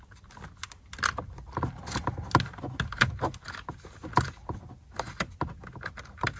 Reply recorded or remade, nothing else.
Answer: recorded